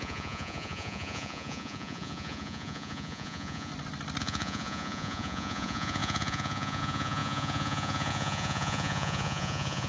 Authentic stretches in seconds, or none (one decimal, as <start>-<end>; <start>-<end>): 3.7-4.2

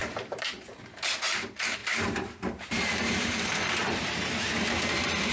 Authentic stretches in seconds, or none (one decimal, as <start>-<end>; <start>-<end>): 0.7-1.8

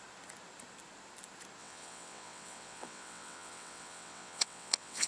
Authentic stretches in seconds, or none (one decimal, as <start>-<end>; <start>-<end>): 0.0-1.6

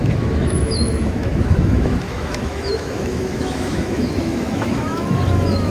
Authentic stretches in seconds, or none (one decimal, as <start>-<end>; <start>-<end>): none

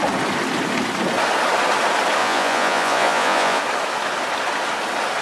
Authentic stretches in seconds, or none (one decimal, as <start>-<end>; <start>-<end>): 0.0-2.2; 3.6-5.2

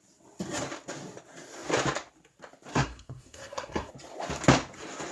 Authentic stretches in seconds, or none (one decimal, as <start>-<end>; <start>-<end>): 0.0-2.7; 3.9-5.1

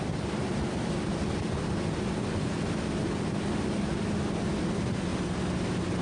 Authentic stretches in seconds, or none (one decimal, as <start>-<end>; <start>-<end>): 0.0-6.0

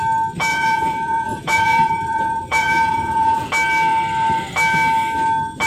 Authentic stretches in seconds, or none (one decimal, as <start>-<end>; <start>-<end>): 0.0-0.5; 3.5-5.7